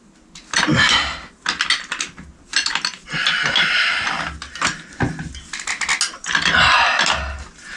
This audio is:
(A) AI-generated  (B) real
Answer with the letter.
B